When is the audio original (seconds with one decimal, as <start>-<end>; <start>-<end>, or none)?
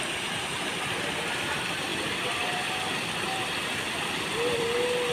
0.0-5.1